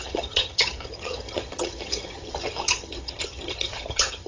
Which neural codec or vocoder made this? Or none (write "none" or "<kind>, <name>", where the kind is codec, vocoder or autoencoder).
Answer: vocoder, HiFi-GAN